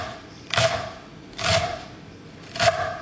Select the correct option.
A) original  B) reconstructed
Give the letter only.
B